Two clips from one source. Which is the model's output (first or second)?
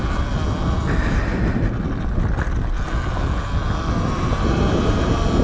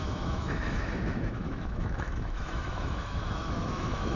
second